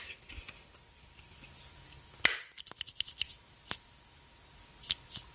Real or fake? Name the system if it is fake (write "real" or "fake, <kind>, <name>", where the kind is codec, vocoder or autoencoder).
real